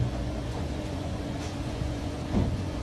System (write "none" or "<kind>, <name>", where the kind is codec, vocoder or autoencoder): vocoder, Vocos